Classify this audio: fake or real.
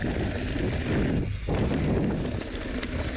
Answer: real